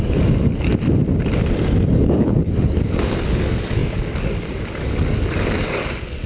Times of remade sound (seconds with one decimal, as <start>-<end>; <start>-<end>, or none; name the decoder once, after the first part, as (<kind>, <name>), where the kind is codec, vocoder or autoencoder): 0.0-0.7 (codec, DAC); 1.9-6.3